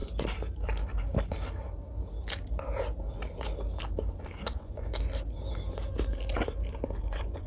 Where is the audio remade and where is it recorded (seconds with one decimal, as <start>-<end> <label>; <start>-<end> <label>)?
0.0-4.4 recorded; 4.4-4.9 remade; 4.9-7.0 recorded; 7.0-7.5 remade